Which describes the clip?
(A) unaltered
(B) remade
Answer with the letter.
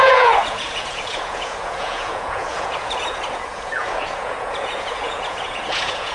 B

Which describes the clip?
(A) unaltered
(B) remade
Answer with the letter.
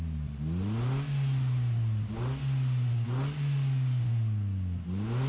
A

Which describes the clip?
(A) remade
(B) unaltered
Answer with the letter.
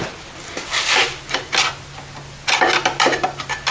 B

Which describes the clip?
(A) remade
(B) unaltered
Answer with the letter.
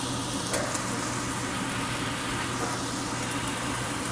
B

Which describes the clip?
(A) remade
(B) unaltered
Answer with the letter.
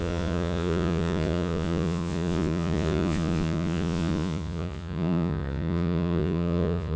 A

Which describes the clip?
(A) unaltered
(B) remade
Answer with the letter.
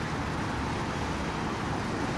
A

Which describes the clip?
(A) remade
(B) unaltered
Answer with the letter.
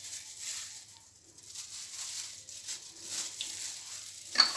B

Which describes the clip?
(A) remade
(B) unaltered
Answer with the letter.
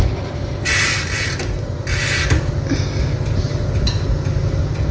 B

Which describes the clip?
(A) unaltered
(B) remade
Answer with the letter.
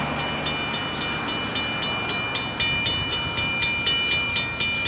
A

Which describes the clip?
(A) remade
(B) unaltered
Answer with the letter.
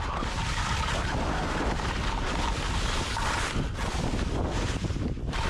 B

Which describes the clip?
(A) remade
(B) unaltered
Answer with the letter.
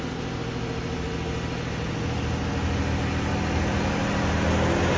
B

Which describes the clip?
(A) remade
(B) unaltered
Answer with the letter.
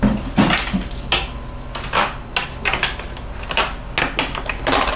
B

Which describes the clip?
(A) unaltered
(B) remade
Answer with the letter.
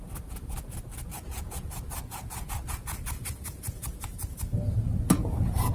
B